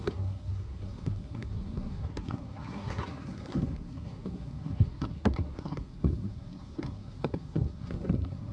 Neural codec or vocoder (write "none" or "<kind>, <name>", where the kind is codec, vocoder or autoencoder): codec, SNAC